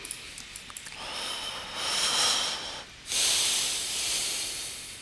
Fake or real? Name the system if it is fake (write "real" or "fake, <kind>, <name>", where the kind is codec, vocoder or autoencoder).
real